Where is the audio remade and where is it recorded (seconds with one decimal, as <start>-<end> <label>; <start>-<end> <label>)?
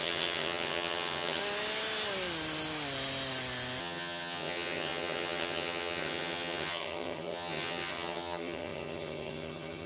0.0-1.4 remade; 1.4-3.8 recorded; 3.8-9.9 remade